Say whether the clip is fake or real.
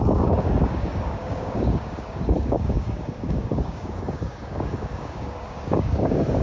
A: fake